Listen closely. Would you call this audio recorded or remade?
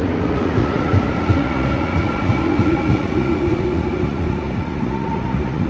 remade